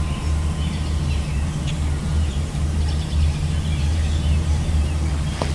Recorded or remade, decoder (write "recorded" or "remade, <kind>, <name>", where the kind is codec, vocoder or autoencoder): remade, vocoder, BigVGAN v2